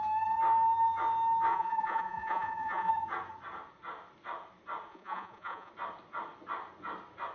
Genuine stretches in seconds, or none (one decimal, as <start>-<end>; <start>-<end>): 0.0-1.5; 2.9-4.9; 5.7-7.3